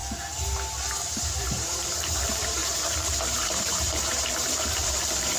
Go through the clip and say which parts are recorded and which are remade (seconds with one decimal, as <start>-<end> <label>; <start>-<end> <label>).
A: 0.0-1.2 recorded; 1.2-2.6 remade; 2.6-3.2 recorded; 3.2-5.4 remade